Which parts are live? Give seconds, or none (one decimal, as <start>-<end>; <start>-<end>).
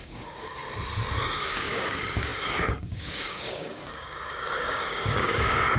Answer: 0.6-1.2